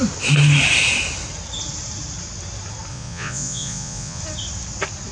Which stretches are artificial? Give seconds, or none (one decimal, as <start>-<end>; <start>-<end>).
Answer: 2.9-4.2

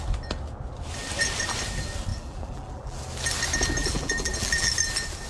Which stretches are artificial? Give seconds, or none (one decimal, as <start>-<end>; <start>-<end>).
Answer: 2.1-3.0; 3.8-4.7

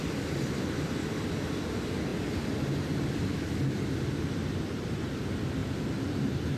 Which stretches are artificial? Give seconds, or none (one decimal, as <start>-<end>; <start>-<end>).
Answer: 5.6-6.6

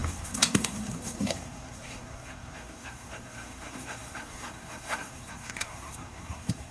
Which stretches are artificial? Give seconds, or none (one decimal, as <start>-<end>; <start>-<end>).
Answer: 0.0-6.7

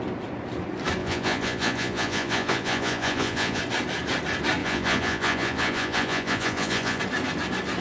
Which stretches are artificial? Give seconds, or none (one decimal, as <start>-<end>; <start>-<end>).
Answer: 1.0-3.6; 4.6-7.0